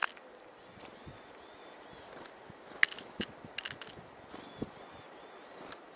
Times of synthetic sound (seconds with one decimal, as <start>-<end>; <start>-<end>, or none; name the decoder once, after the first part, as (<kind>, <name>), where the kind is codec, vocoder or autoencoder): none